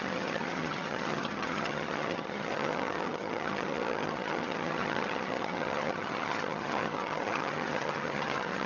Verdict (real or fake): fake